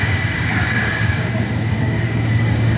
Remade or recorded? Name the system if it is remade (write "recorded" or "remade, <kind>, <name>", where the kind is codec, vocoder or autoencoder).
remade, codec, DAC